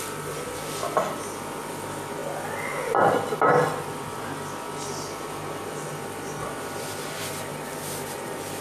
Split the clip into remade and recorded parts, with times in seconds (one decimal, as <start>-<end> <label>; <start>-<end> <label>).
0.0-8.6 recorded